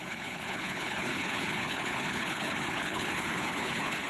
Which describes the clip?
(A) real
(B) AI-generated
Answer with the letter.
B